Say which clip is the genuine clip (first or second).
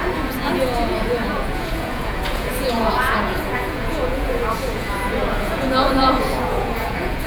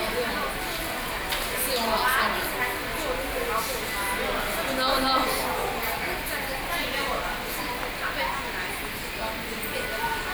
second